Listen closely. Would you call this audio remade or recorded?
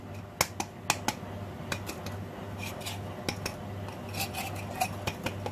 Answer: recorded